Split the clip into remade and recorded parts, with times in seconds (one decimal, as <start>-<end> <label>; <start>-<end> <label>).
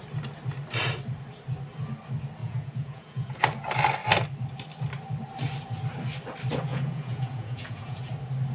0.0-2.4 recorded; 2.4-3.4 remade; 3.4-6.7 recorded; 6.7-8.0 remade; 8.0-8.5 recorded